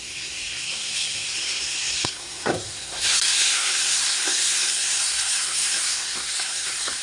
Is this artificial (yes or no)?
yes